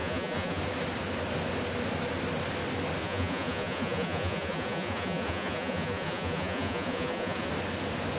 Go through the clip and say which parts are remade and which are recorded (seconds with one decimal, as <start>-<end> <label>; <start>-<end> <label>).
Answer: 0.0-0.6 remade; 0.6-3.0 recorded; 3.0-7.5 remade; 7.5-8.2 recorded